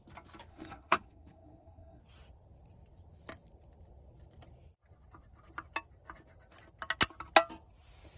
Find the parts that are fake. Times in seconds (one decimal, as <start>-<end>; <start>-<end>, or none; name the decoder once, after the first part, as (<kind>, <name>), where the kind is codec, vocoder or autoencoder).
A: 0.5-2.0 (codec, SNAC)